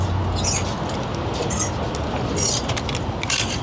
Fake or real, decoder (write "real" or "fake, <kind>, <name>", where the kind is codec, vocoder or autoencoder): real